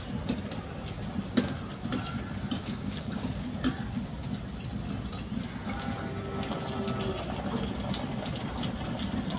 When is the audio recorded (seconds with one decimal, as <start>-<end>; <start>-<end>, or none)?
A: 0.0-2.6; 3.5-9.4